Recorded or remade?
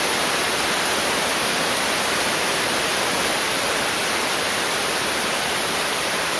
remade